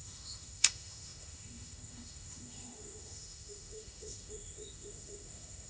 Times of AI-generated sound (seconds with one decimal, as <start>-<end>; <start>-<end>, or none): 0.0-5.7